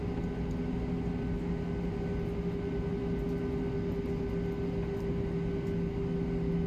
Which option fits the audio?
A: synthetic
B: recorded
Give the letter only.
B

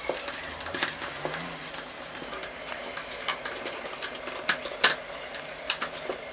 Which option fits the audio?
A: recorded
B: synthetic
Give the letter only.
B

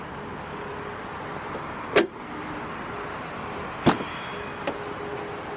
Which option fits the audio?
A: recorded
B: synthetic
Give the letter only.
A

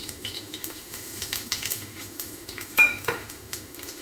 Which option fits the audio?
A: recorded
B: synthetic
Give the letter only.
B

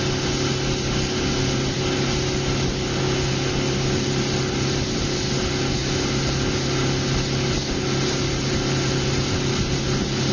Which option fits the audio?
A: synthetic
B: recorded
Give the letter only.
B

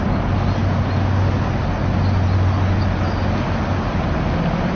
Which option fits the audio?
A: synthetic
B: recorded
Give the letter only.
B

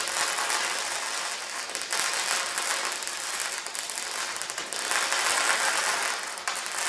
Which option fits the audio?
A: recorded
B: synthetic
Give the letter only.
A